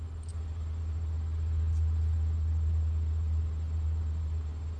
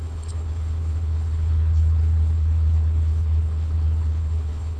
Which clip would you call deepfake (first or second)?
second